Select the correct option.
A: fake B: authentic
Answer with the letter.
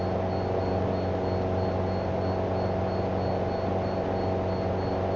B